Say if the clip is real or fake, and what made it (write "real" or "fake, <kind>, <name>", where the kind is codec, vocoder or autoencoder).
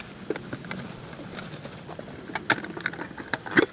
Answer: real